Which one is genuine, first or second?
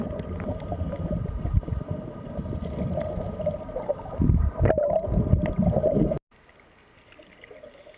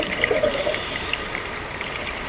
first